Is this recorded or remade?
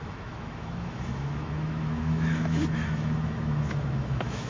remade